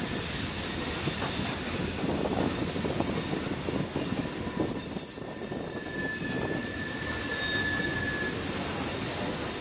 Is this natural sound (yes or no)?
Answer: yes